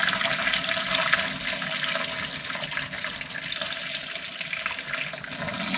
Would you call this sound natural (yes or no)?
yes